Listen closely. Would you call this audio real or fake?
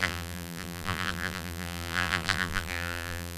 fake